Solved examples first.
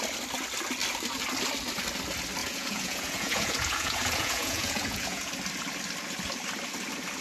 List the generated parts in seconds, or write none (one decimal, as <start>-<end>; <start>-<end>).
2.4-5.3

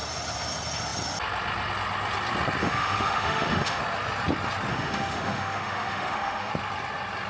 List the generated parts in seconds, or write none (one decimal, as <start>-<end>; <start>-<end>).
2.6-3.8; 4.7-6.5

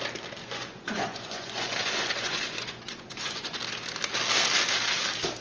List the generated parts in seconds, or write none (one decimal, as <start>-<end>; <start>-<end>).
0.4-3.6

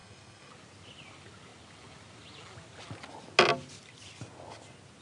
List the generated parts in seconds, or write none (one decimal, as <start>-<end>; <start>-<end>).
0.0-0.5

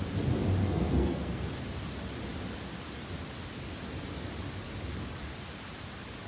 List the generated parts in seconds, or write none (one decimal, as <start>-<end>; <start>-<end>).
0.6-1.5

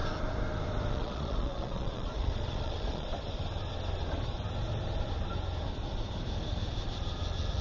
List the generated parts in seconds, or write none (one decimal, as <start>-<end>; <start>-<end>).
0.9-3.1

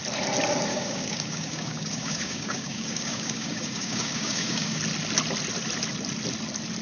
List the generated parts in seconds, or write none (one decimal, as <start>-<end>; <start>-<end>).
0.7-4.8